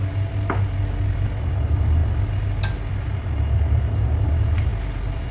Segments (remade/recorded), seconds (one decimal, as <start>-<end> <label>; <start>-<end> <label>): 0.0-5.3 recorded